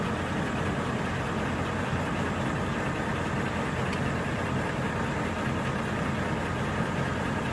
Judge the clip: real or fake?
real